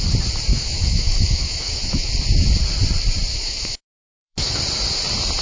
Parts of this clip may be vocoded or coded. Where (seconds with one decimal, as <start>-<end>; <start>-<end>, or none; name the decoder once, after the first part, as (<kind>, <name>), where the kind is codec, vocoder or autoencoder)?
0.5-2.1 (autoencoder, DAC-VAE); 3.3-4.6